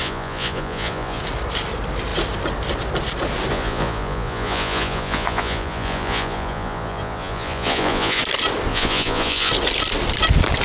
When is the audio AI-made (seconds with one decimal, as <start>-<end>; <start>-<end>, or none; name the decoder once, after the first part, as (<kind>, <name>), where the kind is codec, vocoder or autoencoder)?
0.0-1.2 (vocoder, Vocos); 3.5-8.2; 8.7-9.5